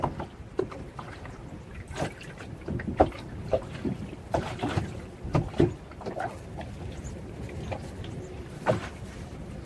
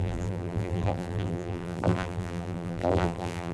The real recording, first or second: first